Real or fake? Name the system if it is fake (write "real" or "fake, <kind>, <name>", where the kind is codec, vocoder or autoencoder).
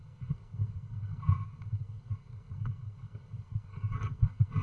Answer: fake, codec, SNAC